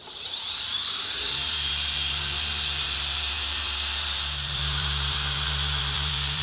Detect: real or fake fake